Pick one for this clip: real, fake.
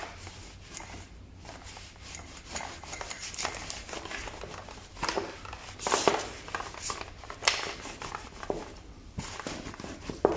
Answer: fake